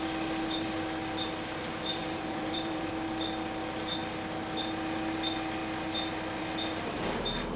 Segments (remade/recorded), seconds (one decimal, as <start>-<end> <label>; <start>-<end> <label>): 0.0-1.9 recorded; 1.9-2.9 remade; 2.9-7.6 recorded